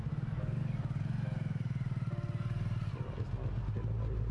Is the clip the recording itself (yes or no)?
yes